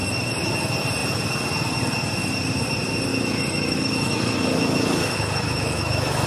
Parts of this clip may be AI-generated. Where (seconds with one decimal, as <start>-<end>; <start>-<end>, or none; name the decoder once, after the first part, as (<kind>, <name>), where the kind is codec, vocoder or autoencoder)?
0.0-0.5 (autoencoder, DAC-VAE); 3.1-6.3